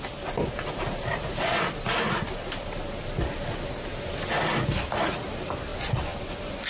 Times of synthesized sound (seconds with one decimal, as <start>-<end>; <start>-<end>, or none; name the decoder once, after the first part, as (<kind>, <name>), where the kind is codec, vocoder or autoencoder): none